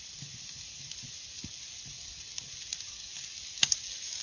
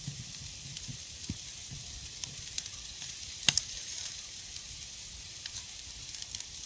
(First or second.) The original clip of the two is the first